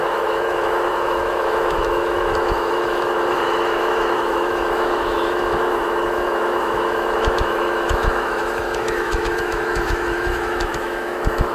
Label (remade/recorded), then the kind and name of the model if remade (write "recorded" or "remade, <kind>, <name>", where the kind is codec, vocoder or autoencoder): remade, autoencoder, DAC-VAE